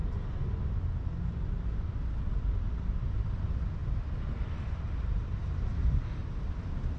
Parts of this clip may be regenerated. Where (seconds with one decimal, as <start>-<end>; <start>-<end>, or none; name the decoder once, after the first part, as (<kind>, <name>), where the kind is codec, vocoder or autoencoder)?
2.0-7.0 (vocoder, BigVGAN v2)